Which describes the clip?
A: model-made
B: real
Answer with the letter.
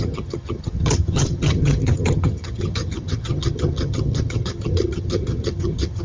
A